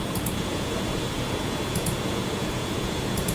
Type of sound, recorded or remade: remade